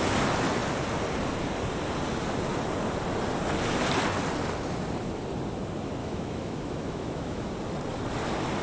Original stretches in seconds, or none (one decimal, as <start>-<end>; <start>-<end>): 0.0-6.0; 7.5-8.6